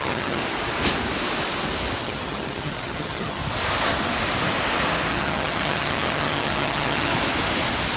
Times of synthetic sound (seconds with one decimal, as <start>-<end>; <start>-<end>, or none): 0.0-0.4; 2.0-3.4; 5.1-7.1